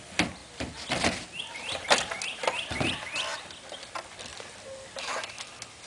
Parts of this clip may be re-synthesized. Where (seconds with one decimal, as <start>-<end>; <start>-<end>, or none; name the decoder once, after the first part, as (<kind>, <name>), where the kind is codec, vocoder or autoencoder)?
4.3-5.1 (vocoder, BigVGAN v2)

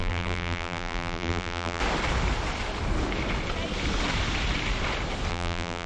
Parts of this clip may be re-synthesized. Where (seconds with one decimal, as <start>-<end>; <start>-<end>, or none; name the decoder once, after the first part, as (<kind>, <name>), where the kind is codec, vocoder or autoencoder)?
0.0-1.8 (vocoder, BigVGAN v2); 5.3-5.9

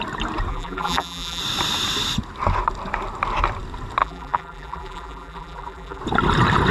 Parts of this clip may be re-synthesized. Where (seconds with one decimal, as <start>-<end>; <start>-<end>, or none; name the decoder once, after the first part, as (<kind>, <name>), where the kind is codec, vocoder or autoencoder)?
0.5-1.4 (vocoder, BigVGAN v2); 4.0-6.0

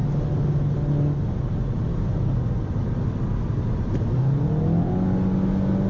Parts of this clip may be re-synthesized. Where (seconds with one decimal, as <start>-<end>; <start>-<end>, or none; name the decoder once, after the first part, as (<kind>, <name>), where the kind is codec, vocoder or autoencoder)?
none